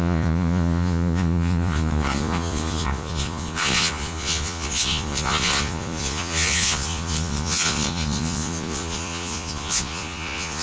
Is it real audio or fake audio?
fake